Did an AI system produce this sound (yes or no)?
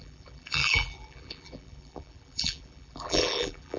yes